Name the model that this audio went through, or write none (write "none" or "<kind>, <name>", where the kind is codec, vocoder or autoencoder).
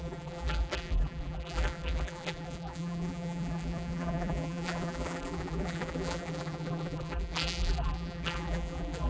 vocoder, BigVGAN v2